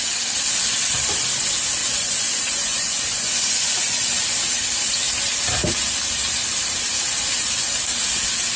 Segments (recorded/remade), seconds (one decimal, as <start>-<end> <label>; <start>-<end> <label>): 0.0-1.8 recorded; 1.8-4.2 remade; 4.2-8.6 recorded